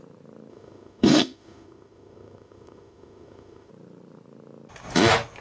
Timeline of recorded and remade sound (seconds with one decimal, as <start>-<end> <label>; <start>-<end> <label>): 0.0-0.5 recorded; 0.5-3.7 remade; 3.7-5.4 recorded